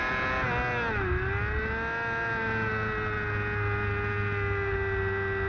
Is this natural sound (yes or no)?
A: yes